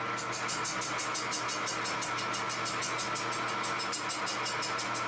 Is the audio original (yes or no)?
yes